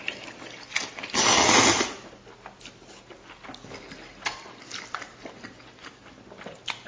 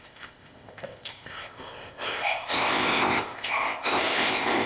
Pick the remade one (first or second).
second